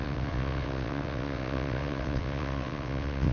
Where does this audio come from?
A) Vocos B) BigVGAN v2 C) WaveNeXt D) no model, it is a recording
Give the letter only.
C